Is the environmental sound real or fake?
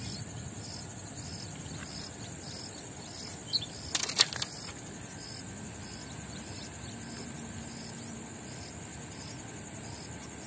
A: real